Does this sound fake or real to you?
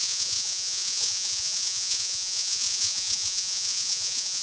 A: fake